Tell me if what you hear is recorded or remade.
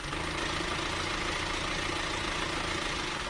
recorded